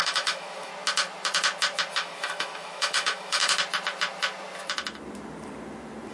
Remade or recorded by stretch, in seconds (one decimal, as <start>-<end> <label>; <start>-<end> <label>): 0.0-0.7 remade; 0.7-1.9 recorded; 1.9-3.4 remade; 3.4-6.1 recorded